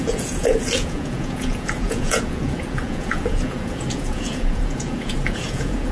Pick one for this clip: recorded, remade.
remade